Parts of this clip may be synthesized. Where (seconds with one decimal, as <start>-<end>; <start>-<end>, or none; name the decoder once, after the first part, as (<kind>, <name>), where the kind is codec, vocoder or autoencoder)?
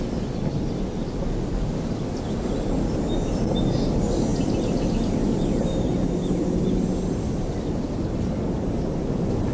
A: none